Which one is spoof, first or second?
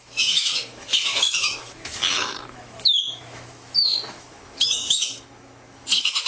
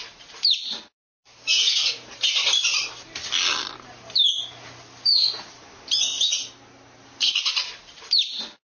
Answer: first